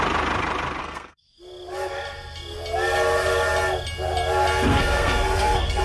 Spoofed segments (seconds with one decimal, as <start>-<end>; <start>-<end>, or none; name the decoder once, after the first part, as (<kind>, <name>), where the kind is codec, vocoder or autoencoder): 0.8-1.4 (codec, SNAC); 4.7-5.8